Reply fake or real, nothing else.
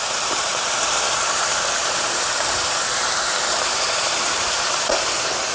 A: fake